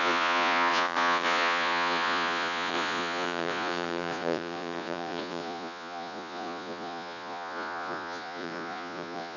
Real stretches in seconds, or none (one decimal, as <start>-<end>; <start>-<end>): none